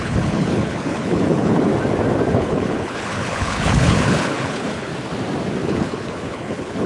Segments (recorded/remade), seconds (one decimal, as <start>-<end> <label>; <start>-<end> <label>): 0.0-1.7 remade; 1.7-2.3 recorded; 2.3-4.9 remade; 4.9-5.6 recorded; 5.6-6.9 remade